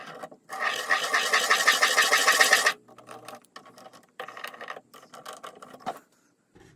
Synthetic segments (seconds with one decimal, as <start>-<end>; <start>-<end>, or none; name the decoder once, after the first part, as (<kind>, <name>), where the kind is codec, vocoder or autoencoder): 3.9-4.9 (vocoder, BigVGAN v2)